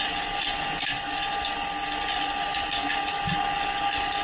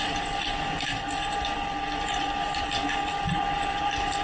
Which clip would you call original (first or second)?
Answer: first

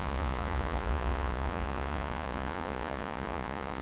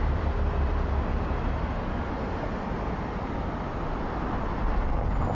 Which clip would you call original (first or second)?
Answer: second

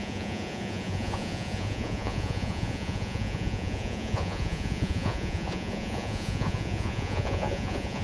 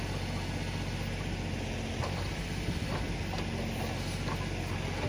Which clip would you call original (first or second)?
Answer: second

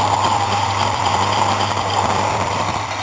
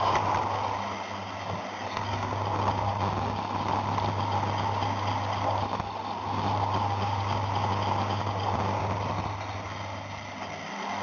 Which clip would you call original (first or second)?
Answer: second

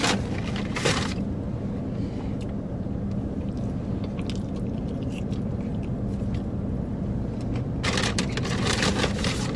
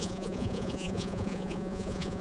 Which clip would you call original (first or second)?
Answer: first